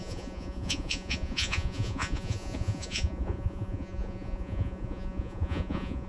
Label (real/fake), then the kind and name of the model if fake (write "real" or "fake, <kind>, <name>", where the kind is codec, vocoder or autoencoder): fake, vocoder, Vocos